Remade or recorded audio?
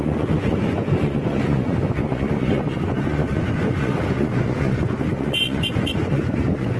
remade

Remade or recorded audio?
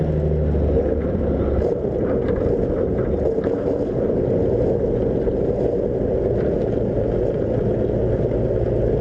recorded